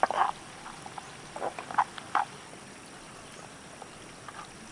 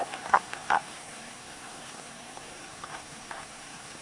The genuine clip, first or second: first